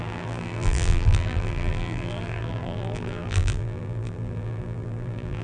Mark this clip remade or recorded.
remade